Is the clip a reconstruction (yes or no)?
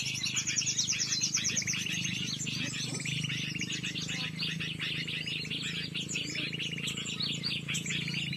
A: no